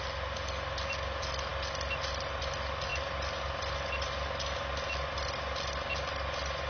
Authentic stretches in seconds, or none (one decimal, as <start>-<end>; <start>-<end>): 0.0-6.7